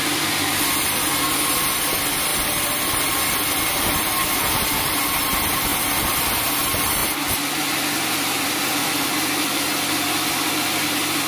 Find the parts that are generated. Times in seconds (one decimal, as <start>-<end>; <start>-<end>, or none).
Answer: 2.3-3.3; 7.0-10.5